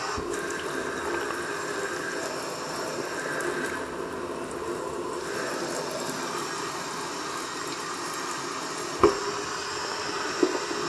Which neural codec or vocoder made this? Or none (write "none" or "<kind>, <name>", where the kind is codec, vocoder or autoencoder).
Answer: none